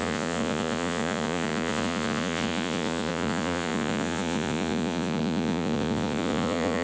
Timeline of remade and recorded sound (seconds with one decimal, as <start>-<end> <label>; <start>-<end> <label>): 0.0-6.8 remade